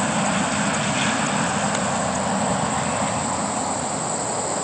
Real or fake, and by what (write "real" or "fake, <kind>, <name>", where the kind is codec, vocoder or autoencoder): real